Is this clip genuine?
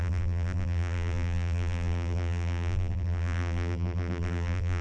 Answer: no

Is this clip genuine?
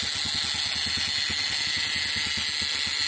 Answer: yes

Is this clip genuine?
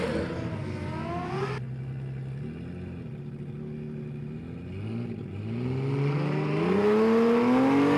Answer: yes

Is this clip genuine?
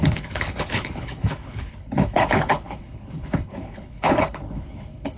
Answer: no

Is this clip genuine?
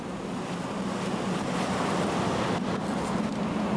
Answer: yes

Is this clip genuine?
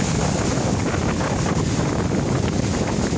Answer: yes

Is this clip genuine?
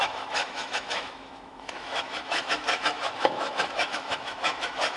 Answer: no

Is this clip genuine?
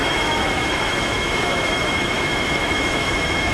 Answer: no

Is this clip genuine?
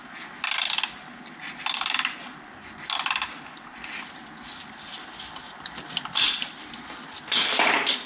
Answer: yes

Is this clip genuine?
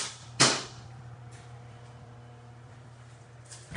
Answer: no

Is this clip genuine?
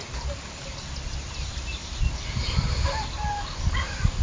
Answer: yes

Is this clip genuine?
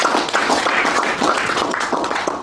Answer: no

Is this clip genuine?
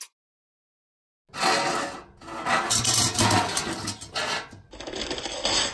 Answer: yes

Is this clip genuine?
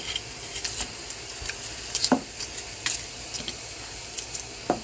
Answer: yes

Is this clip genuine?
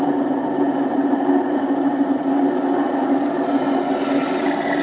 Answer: yes